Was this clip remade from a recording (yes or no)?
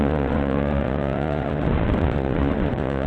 yes